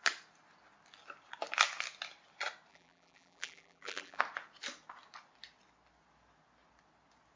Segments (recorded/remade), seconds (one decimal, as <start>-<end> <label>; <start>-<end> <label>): 0.0-2.7 recorded; 2.7-4.2 remade; 4.2-7.4 recorded